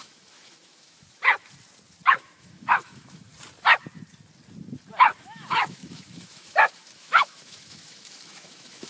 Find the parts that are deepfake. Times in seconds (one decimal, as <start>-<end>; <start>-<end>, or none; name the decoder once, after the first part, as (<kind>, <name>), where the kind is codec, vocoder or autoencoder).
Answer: 0.0-1.2 (autoencoder, DAC-VAE); 2.1-3.3; 5.2-8.9